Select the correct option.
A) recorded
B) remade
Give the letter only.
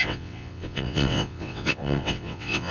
B